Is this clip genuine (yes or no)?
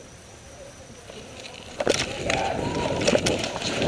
no